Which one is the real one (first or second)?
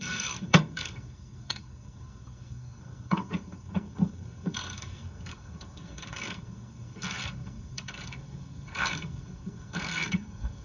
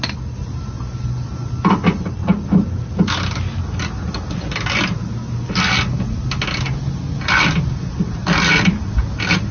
second